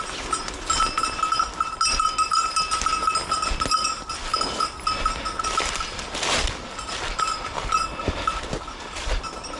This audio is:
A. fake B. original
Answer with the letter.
B